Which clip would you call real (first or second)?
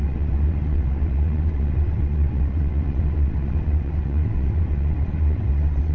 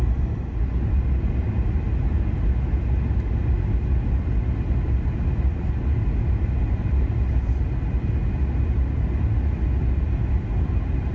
second